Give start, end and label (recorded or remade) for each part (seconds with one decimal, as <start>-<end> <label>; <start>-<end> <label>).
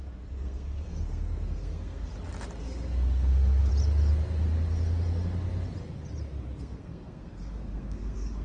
0.0-2.1 remade; 2.1-2.6 recorded; 2.6-3.7 remade; 3.7-6.6 recorded; 6.6-8.4 remade